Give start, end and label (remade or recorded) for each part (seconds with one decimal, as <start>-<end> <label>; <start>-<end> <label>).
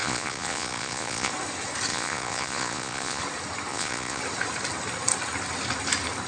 0.0-1.3 remade; 1.3-1.9 recorded; 1.9-3.2 remade; 3.2-3.7 recorded; 3.7-4.2 remade; 4.2-6.3 recorded